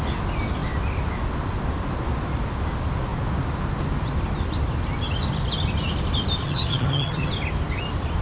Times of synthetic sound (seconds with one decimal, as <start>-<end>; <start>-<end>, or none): 6.4-7.3